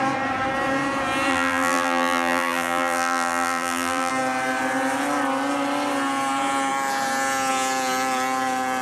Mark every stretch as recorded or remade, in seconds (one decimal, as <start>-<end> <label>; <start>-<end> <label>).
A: 0.0-1.3 recorded; 1.3-4.1 remade; 4.1-8.8 recorded